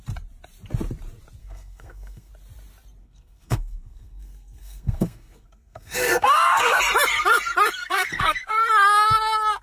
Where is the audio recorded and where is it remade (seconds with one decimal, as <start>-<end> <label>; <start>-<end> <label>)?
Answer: 0.0-1.4 recorded; 1.4-2.3 remade; 2.3-3.0 recorded; 3.0-6.8 remade; 6.8-7.8 recorded; 7.8-8.5 remade; 8.5-9.6 recorded